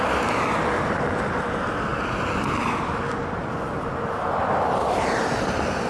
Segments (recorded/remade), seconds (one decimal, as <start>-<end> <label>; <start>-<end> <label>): 0.0-5.9 recorded